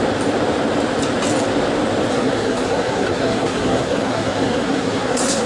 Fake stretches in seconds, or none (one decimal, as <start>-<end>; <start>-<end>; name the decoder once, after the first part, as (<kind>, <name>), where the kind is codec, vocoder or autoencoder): 2.1-5.5 (codec, SNAC)